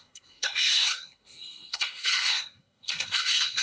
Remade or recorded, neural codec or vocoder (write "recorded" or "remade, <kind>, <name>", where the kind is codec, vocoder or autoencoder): remade, codec, SNAC